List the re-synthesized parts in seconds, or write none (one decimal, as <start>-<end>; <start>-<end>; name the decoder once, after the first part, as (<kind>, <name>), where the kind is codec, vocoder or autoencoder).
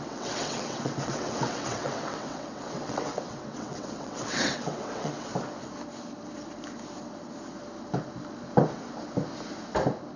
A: 0.0-5.3 (vocoder, WaveNeXt)